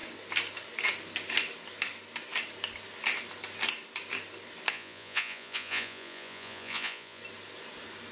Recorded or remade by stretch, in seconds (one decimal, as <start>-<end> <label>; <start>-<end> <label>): 0.0-4.7 recorded; 4.7-7.2 remade; 7.2-8.1 recorded